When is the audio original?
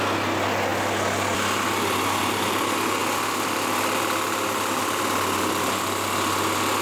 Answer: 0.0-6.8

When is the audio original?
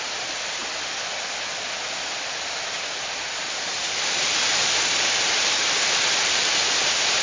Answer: 0.6-3.3